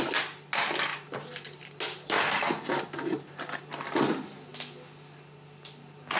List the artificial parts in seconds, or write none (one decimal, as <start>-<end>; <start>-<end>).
none